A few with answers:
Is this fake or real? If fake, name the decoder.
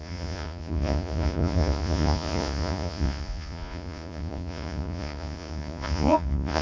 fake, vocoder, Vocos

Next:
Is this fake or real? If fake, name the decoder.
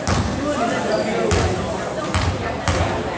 real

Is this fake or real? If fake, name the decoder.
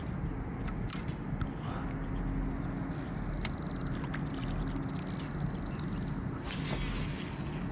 real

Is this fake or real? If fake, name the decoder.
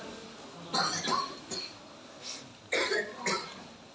real